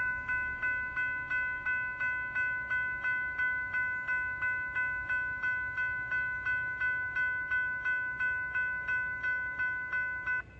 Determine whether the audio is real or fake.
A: real